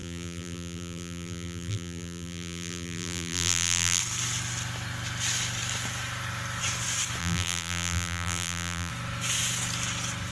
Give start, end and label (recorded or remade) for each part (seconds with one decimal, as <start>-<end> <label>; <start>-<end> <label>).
0.0-4.0 remade; 4.0-7.2 recorded; 7.2-8.9 remade; 8.9-10.3 recorded